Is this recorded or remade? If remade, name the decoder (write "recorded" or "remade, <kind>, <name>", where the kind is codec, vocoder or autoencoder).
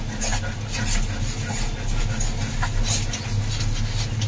recorded